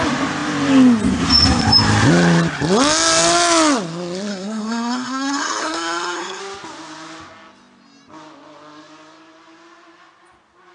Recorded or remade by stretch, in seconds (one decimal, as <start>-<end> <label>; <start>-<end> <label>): 0.0-4.3 recorded; 4.3-6.4 remade; 6.4-10.7 recorded